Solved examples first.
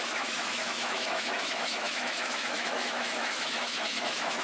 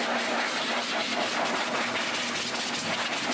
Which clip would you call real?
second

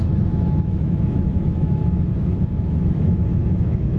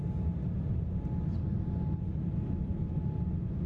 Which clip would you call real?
second